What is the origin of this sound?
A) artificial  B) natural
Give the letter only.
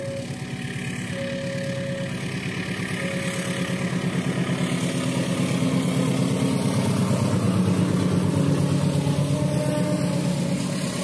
B